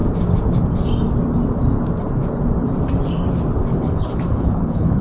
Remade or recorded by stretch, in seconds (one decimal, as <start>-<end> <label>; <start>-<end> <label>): 0.0-3.7 recorded; 3.7-5.0 remade